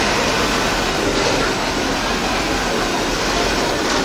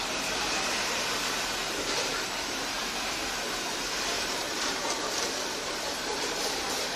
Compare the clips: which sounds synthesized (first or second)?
second